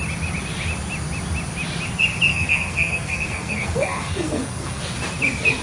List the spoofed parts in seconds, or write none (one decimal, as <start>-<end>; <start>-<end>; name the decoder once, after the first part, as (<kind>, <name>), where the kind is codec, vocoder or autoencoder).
2.3-4.8 (codec, SNAC)